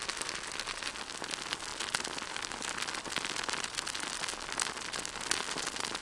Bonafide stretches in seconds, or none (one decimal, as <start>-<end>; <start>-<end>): 0.0-6.0

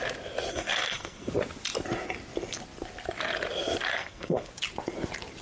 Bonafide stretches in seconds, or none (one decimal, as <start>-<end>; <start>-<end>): 0.0-0.5; 1.3-3.9; 4.5-5.4

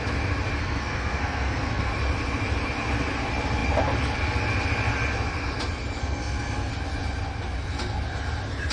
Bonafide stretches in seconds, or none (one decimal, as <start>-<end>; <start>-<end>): 0.0-0.6; 1.9-6.0; 6.7-8.7

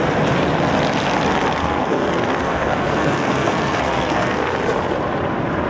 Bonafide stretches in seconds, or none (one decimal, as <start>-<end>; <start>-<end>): 0.0-1.6; 4.6-5.7

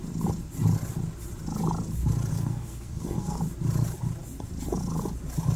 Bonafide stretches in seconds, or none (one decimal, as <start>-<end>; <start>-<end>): 0.0-2.3; 3.4-5.6

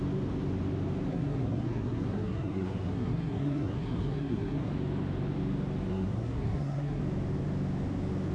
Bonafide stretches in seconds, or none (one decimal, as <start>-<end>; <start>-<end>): 0.0-1.1; 4.7-5.9; 7.0-8.3

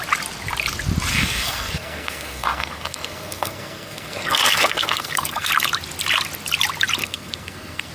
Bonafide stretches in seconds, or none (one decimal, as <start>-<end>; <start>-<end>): 0.0-1.1; 5.5-7.0